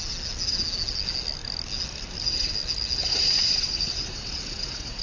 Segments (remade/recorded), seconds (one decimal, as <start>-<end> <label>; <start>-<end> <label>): 0.0-3.1 recorded; 3.1-5.0 remade